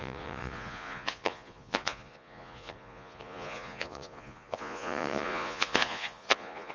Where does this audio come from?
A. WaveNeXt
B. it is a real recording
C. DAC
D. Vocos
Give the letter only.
D